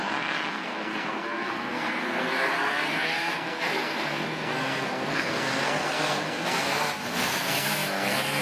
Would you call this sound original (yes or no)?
no